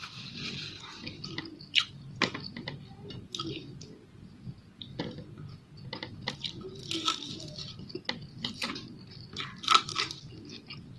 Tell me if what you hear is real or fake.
real